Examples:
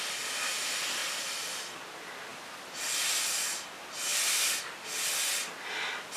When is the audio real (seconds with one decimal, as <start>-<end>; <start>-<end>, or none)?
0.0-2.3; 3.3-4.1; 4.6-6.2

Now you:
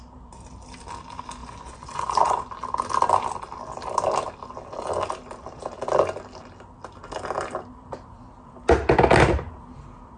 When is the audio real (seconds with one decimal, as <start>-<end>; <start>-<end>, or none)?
0.0-1.4; 2.5-10.2

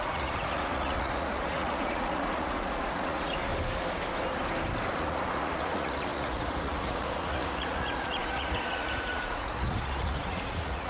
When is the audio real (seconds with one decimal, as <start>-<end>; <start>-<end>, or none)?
3.5-4.9

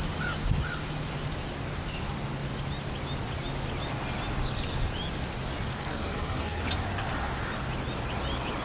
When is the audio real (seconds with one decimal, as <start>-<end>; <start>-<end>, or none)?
0.0-5.8; 6.6-8.6

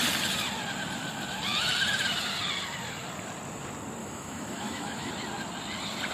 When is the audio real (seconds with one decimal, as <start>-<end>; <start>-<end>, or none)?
0.0-4.0; 5.1-6.1